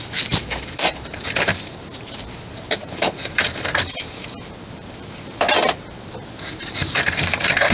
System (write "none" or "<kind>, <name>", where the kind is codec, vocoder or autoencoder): vocoder, BigVGAN v2